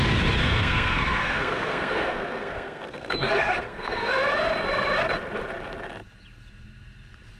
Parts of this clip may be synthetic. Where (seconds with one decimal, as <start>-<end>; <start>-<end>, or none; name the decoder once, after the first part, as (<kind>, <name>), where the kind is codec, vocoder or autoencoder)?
0.4-4.1 (codec, SNAC)